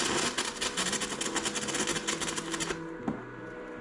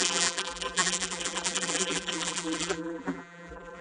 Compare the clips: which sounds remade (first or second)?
second